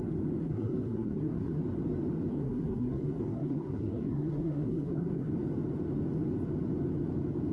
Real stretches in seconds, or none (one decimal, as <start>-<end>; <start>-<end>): 0.0-0.4; 1.6-2.3; 5.3-7.5